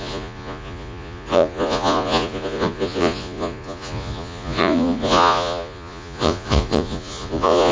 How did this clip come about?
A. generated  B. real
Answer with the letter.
A